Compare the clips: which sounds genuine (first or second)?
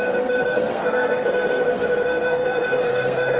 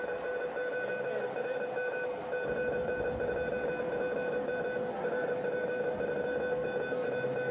second